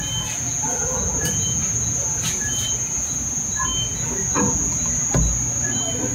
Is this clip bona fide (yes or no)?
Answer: yes